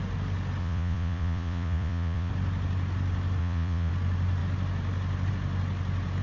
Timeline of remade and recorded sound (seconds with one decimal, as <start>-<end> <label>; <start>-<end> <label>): 0.0-0.6 recorded; 0.6-2.3 remade; 2.3-3.4 recorded; 3.4-3.9 remade; 3.9-6.2 recorded